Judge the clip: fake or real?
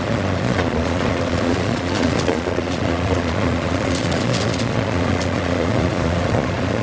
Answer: fake